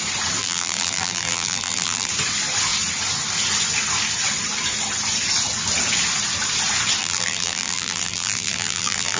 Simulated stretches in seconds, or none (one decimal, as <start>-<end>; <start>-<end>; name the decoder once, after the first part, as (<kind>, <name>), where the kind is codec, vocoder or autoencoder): 0.4-2.1 (vocoder, BigVGAN v2); 7.0-9.2